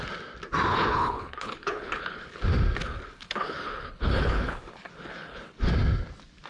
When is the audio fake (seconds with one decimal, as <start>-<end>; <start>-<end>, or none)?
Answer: 0.7-2.3; 2.8-5.7